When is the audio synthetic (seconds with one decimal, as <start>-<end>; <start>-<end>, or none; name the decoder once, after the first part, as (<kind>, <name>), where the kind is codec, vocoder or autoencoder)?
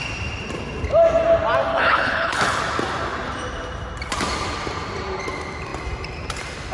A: 1.7-2.6 (codec, HILCodec)